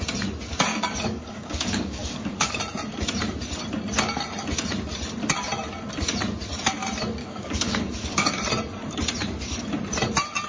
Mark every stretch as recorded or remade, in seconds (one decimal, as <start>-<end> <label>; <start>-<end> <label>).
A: 0.0-0.7 recorded; 0.7-2.6 remade; 2.6-7.2 recorded; 7.2-8.3 remade; 8.3-10.5 recorded